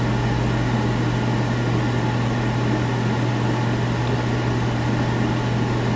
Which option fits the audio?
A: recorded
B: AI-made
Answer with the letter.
A